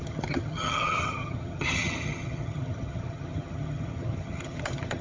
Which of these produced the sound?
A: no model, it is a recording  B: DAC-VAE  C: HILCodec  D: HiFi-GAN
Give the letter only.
D